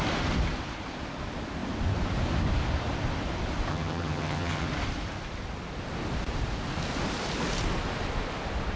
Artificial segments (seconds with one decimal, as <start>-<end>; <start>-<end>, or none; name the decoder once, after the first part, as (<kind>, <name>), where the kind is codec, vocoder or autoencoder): 3.7-4.7 (vocoder, HiFi-GAN)

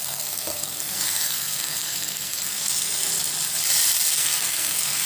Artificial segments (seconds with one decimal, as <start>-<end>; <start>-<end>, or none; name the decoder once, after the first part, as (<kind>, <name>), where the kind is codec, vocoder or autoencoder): 0.0-3.1 (codec, SNAC); 4.1-5.1

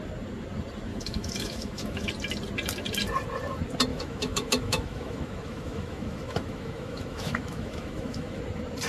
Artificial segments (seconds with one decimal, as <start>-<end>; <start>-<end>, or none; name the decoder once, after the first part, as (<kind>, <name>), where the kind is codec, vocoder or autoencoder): 0.9-2.1 (autoencoder, DAC-VAE); 3.9-8.4

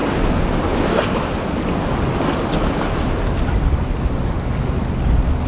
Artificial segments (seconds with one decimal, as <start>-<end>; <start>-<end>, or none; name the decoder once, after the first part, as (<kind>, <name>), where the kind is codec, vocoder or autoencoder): none

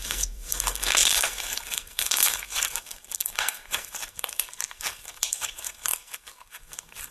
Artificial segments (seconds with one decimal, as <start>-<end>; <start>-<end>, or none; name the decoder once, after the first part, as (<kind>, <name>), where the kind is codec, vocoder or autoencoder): 0.0-7.1 (codec, SNAC)

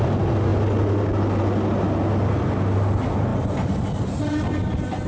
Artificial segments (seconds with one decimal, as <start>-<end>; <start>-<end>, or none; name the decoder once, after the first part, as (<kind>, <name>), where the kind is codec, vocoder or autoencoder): none